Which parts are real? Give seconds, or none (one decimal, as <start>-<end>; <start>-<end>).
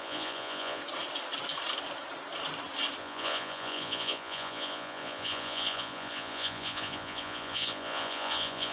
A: 0.8-3.0